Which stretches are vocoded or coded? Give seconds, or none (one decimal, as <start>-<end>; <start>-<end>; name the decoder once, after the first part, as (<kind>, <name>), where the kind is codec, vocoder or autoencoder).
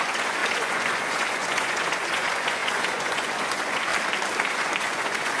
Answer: 0.0-3.9 (vocoder, Vocos); 4.5-5.4